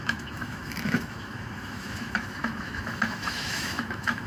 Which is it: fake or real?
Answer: fake